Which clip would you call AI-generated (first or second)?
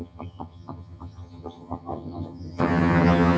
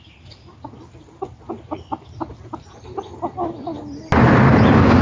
first